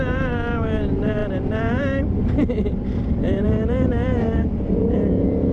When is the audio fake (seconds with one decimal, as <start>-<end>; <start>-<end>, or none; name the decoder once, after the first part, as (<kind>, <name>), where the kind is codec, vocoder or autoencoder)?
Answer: 0.0-5.5 (vocoder, BigVGAN v2)